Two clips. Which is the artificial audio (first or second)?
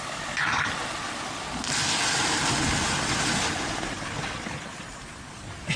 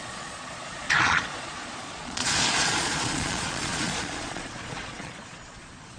second